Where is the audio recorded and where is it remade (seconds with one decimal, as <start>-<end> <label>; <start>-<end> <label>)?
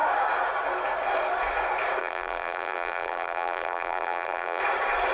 0.0-2.0 recorded; 2.0-4.6 remade; 4.6-5.1 recorded